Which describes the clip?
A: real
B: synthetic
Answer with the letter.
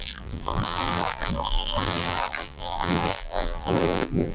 B